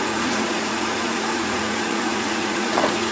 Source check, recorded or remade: remade